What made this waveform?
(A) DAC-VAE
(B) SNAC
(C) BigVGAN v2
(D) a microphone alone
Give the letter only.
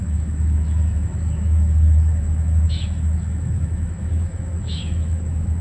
A